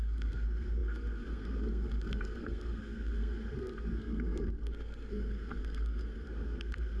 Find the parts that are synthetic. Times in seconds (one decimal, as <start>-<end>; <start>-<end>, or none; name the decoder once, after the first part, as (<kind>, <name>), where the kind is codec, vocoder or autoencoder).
0.0-7.0 (codec, SNAC)